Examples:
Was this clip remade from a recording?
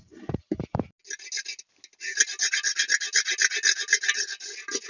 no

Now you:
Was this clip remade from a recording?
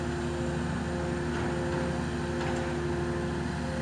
no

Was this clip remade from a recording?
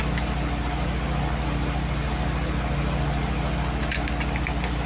no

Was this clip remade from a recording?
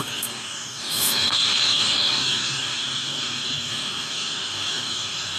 yes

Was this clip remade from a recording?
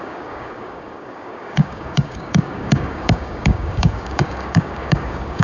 yes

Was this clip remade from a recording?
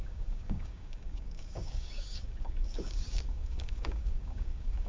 yes